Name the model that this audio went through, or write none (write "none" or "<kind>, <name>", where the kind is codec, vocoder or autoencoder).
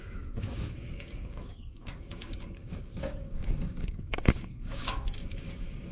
codec, DAC